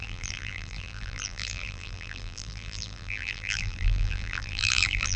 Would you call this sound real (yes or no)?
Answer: no